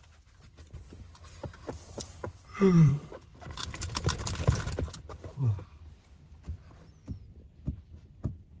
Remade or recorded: remade